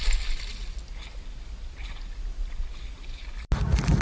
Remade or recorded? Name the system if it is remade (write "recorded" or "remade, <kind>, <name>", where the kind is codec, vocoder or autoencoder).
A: recorded